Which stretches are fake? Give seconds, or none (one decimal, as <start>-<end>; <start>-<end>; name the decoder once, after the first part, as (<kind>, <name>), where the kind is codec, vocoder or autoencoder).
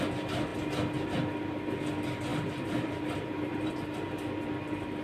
2.3-3.7 (vocoder, BigVGAN v2)